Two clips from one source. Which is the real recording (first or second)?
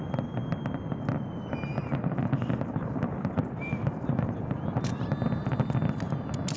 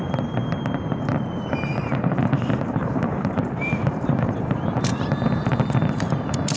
first